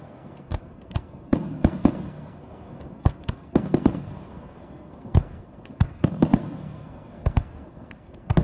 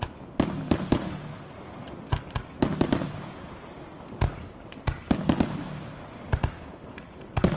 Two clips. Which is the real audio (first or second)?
second